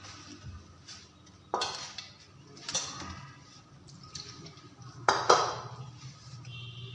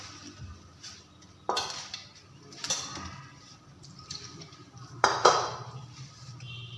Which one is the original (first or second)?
first